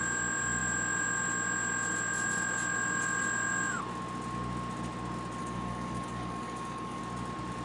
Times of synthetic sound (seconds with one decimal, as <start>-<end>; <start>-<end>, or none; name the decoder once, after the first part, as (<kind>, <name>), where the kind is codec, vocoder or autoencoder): 5.4-7.0 (codec, DAC)